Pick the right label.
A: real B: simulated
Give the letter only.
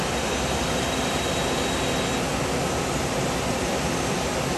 A